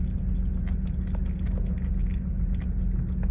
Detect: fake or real real